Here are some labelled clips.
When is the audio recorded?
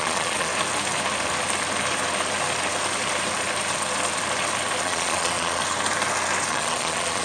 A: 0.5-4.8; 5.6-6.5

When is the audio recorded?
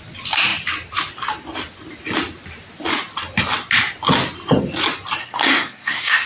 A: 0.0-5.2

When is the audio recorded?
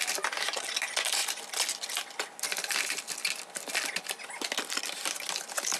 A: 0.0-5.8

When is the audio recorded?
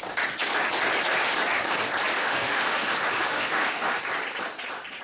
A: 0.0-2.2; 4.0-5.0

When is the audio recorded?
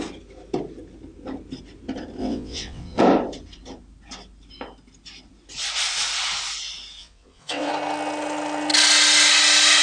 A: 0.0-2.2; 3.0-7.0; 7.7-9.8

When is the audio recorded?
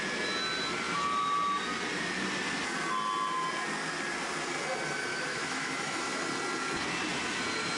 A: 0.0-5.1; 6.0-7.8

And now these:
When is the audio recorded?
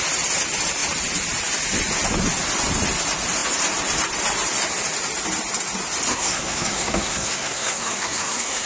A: 0.0-6.1